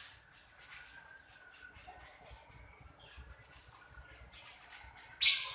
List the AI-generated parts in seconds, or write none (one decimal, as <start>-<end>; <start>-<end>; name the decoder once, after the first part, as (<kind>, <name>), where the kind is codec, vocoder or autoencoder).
none